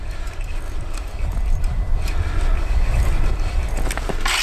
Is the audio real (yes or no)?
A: yes